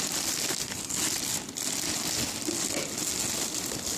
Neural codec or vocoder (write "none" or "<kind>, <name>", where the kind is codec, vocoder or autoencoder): none